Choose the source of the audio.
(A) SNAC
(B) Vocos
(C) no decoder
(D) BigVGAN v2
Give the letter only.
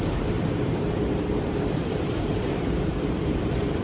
D